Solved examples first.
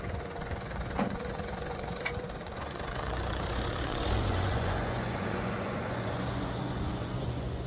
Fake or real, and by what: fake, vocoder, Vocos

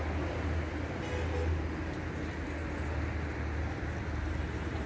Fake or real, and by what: real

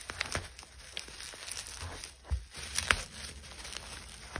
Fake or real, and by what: real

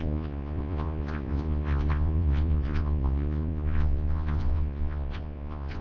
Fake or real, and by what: fake, vocoder, Vocos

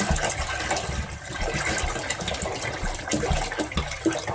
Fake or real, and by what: real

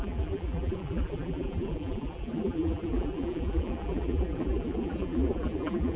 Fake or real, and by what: fake, vocoder, BigVGAN v2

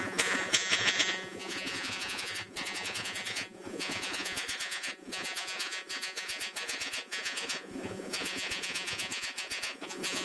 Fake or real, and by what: fake, vocoder, Vocos